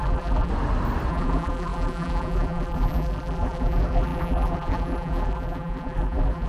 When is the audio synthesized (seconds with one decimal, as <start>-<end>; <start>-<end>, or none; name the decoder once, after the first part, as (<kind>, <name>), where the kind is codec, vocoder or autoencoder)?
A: 0.0-0.5 (vocoder, BigVGAN v2); 1.1-6.5

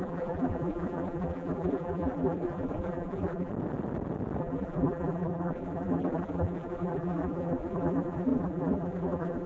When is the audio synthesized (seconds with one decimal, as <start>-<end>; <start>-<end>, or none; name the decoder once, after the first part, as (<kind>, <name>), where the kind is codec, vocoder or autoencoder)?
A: 0.0-3.5 (vocoder, BigVGAN v2); 4.4-9.5

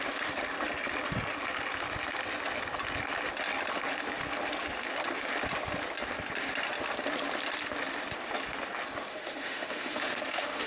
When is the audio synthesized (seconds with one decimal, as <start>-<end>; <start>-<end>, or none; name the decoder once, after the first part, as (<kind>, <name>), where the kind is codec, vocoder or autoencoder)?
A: 9.1-10.7 (autoencoder, DAC-VAE)

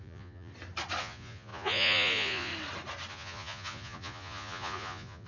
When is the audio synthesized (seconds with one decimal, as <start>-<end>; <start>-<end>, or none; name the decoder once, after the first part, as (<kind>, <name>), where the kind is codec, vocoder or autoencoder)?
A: 0.0-0.5 (vocoder, Vocos); 1.0-2.5; 3.1-5.3

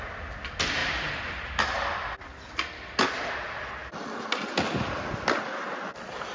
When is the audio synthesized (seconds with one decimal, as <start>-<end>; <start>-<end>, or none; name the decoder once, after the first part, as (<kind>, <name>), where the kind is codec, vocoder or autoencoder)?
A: none

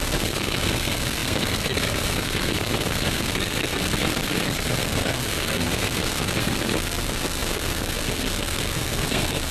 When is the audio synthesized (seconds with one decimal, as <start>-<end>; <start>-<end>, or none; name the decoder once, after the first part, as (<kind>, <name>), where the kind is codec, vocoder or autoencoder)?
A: 0.0-9.5 (codec, SNAC)

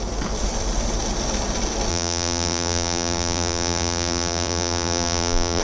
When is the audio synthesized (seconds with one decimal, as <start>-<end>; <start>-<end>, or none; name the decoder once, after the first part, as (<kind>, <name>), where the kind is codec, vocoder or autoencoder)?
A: 1.9-5.6 (vocoder, BigVGAN v2)

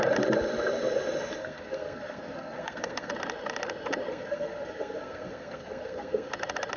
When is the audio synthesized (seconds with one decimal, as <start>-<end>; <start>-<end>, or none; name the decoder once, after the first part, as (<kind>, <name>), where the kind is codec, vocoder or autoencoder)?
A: 1.4-3.1 (codec, SNAC); 4.1-6.3